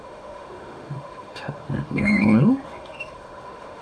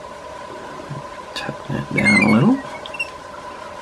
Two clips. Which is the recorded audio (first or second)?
second